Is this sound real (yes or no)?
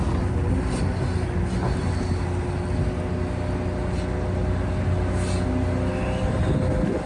yes